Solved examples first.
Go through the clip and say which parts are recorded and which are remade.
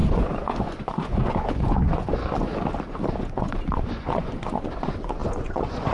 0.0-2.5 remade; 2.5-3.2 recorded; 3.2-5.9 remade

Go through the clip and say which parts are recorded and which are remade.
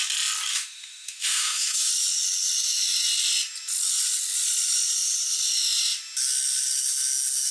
0.0-0.5 recorded; 0.5-1.9 remade; 1.9-7.5 recorded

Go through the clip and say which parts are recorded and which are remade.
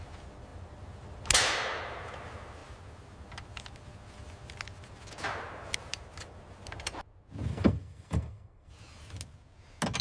0.0-7.5 recorded; 7.5-8.7 remade; 8.7-10.0 recorded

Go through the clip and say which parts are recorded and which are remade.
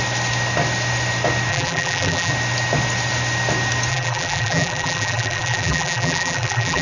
0.0-1.5 recorded; 1.5-2.3 remade; 2.3-3.9 recorded; 3.9-6.8 remade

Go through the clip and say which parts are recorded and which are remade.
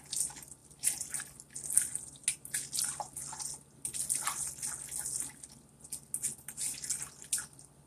0.0-0.6 recorded; 0.6-1.2 remade; 1.2-7.9 recorded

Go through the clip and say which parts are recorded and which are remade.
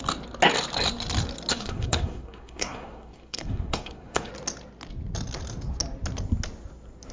0.0-1.5 recorded; 1.5-4.3 remade; 4.3-7.1 recorded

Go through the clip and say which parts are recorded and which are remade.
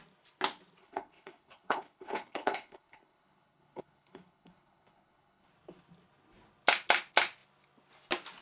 0.0-0.8 recorded; 0.8-5.5 remade; 5.5-8.4 recorded